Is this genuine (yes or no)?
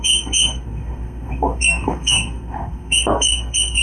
no